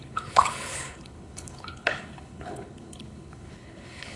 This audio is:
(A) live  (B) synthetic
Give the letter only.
B